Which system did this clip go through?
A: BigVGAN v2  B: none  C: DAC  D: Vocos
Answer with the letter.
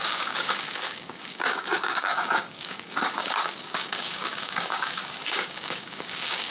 C